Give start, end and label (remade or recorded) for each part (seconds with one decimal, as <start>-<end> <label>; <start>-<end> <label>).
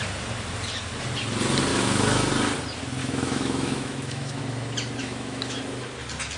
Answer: 0.0-1.7 recorded; 1.7-2.3 remade; 2.3-3.0 recorded; 3.0-4.4 remade; 4.4-5.0 recorded; 5.0-5.6 remade; 5.6-6.4 recorded